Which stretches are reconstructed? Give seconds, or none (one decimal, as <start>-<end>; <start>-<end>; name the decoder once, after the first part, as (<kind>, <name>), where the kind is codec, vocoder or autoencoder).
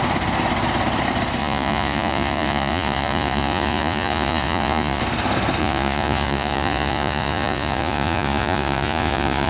1.4-5.0 (vocoder, Vocos); 5.6-9.5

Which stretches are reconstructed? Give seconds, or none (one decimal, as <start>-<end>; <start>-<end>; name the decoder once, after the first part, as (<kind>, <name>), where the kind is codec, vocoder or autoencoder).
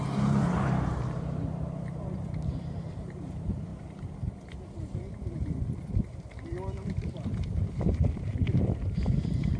0.0-9.6 (vocoder, BigVGAN v2)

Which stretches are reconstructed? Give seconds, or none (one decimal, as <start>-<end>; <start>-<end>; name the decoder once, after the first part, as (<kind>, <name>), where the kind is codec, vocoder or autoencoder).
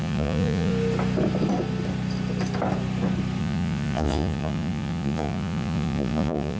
0.0-0.7 (vocoder, Vocos); 3.4-6.6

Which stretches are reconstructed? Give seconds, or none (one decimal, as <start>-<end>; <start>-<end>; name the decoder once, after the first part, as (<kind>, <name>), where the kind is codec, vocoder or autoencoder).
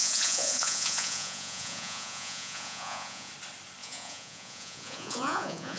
0.0-3.3 (vocoder, Vocos); 3.8-5.8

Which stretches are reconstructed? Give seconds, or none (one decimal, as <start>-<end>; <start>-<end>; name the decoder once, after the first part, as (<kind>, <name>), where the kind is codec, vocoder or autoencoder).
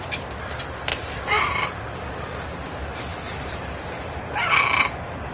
0.9-1.5 (vocoder, BigVGAN v2); 3.1-4.3